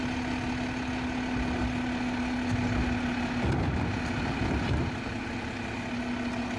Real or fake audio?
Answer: real